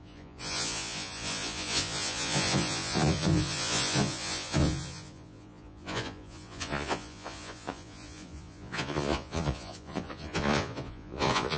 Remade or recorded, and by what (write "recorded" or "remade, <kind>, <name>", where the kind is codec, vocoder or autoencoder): remade, vocoder, Vocos